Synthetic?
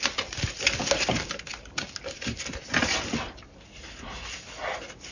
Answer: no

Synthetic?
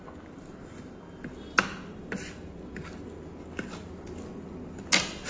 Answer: no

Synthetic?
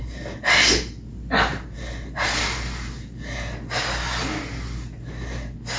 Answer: no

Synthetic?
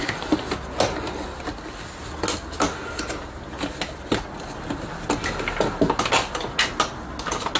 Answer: no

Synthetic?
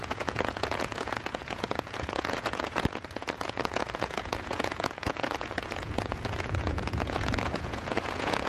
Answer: yes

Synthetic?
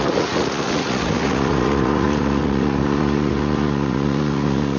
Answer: yes